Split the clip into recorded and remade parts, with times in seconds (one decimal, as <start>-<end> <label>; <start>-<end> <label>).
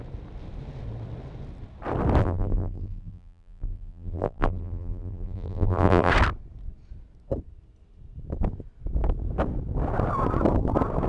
0.0-2.2 recorded; 2.2-6.1 remade; 6.1-11.1 recorded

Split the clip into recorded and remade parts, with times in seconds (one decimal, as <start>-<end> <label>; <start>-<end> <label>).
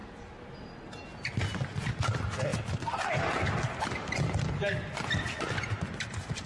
0.0-6.5 recorded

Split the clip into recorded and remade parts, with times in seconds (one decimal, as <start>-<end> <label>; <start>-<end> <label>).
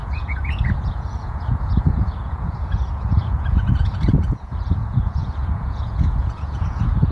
0.0-7.1 remade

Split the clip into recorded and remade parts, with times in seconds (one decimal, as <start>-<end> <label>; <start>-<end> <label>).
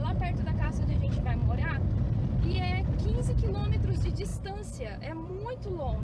0.0-4.3 recorded; 4.3-6.0 remade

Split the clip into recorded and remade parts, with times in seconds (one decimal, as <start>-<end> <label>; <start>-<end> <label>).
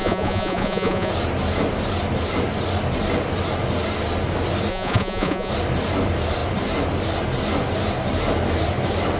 0.0-1.1 remade; 1.1-4.7 recorded; 4.7-5.5 remade; 5.5-9.2 recorded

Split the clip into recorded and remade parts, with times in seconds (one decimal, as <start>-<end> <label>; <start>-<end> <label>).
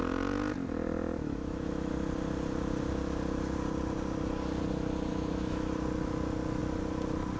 0.0-1.2 recorded; 1.2-1.9 remade; 1.9-5.1 recorded; 5.1-5.7 remade; 5.7-7.4 recorded